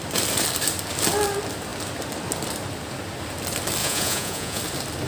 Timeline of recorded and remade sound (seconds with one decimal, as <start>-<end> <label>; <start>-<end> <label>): 0.0-3.8 recorded; 3.8-4.6 remade; 4.6-5.1 recorded